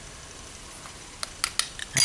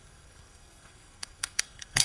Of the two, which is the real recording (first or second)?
first